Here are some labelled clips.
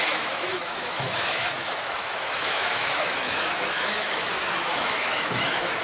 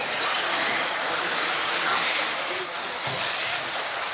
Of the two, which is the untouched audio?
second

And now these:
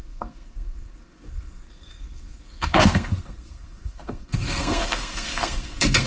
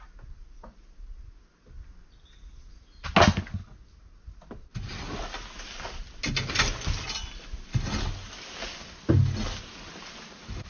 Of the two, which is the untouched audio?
second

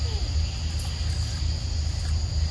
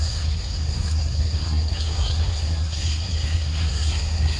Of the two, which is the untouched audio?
first